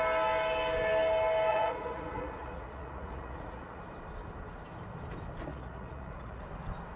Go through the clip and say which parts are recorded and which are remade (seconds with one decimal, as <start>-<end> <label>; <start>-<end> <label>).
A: 0.0-1.5 recorded; 1.5-3.8 remade; 3.8-5.5 recorded; 5.5-6.4 remade; 6.4-7.0 recorded